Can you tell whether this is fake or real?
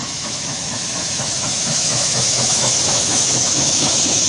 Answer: fake